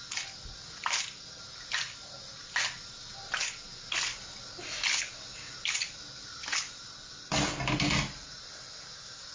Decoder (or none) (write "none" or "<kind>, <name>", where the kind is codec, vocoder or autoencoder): none